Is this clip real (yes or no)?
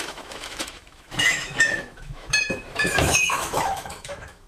no